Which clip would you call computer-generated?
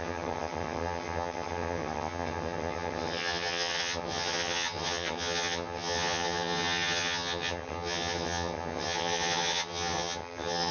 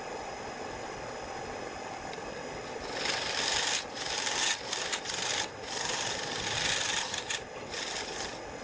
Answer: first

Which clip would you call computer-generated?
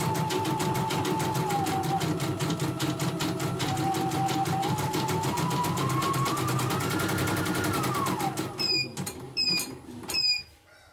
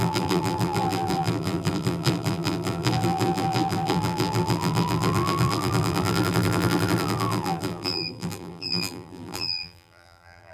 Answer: second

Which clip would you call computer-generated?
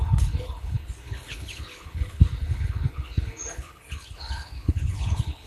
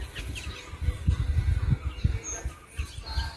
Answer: first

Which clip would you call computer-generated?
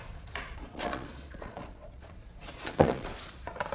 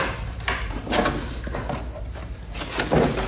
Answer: first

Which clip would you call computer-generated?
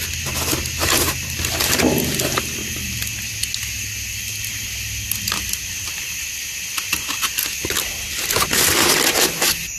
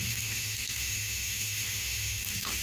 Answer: second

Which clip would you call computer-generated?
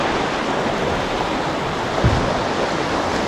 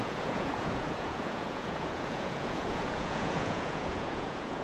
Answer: second